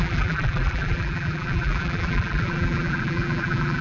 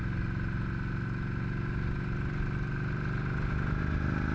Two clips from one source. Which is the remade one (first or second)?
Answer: first